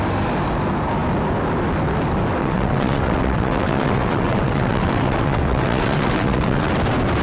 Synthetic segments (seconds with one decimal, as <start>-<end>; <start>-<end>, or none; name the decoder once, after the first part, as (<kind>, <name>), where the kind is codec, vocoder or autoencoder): 2.4-6.7 (vocoder, WaveNeXt)

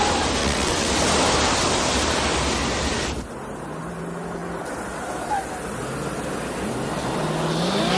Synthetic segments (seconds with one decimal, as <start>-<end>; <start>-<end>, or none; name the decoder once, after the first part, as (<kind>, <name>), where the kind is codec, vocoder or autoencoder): 0.4-0.9 (vocoder, WaveNeXt)

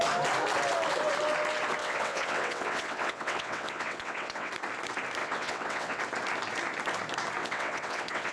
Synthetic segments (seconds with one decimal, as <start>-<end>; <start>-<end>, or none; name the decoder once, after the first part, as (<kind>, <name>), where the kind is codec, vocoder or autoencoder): 1.8-4.5 (vocoder, WaveNeXt); 5.2-6.0; 7.4-8.3

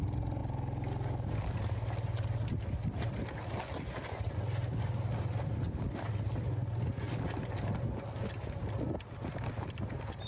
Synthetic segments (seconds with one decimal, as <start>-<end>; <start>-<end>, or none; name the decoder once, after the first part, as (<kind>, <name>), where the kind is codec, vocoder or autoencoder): none

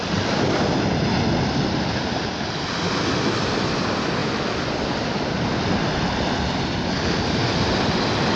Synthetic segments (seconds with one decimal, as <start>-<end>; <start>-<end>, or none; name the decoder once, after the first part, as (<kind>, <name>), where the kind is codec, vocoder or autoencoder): none